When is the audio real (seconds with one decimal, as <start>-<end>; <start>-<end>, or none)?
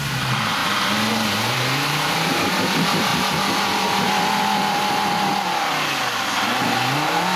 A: 0.6-1.4; 3.1-7.4